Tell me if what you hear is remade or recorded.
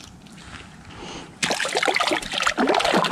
recorded